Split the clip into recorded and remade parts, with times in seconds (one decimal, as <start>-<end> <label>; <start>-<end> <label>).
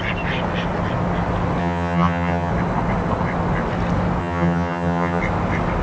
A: 0.0-1.6 recorded; 1.6-2.5 remade; 2.5-4.2 recorded; 4.2-5.2 remade; 5.2-5.8 recorded